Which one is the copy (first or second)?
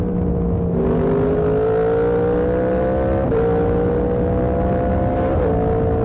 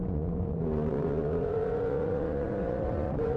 second